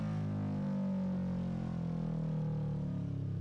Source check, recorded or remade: recorded